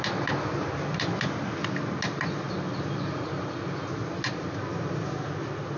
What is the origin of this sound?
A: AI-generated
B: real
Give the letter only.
B